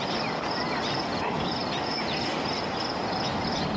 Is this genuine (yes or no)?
no